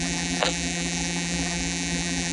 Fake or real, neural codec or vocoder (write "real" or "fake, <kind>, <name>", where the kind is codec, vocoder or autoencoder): fake, vocoder, BigVGAN v2